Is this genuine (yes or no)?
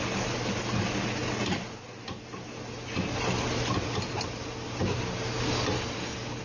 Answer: yes